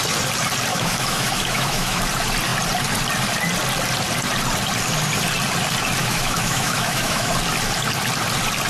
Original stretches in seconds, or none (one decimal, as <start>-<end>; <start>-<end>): 0.0-0.7; 2.0-6.0; 7.3-8.7